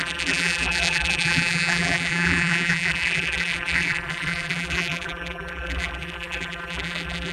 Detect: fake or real fake